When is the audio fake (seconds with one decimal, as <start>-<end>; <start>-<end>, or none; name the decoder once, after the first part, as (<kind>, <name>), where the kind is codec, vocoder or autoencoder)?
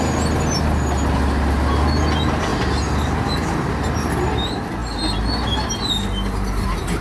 none